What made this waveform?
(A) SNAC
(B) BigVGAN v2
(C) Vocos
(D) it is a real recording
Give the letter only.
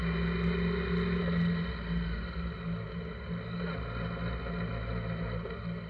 D